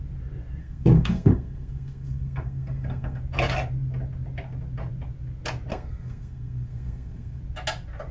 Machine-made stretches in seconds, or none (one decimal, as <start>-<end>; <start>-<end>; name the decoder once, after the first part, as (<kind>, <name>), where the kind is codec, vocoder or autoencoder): 0.6-3.2 (codec, SNAC); 5.7-7.4